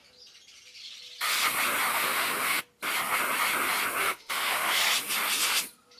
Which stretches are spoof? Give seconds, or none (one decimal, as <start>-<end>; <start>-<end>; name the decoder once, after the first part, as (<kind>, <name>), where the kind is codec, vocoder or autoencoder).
1.9-2.6 (autoencoder, DAC-VAE); 4.0-4.8